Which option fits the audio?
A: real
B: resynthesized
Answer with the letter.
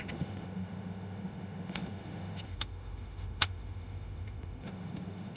B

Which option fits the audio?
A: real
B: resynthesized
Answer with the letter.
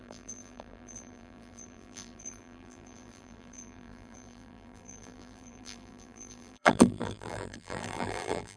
B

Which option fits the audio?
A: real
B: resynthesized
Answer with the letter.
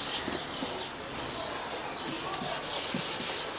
A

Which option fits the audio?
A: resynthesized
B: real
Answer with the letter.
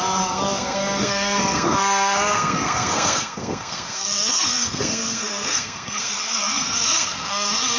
A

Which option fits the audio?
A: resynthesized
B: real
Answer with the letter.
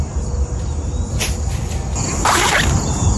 B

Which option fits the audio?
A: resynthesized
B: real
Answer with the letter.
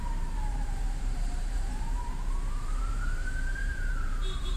A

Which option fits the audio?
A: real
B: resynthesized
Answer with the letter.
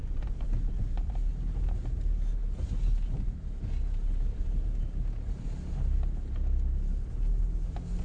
A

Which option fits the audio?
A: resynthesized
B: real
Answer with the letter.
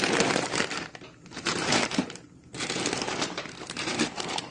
A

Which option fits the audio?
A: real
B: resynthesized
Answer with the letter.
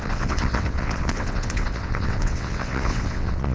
B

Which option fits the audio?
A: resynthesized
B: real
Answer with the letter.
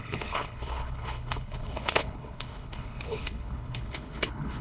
A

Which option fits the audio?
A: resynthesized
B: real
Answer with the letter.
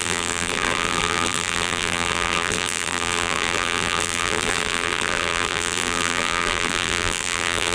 A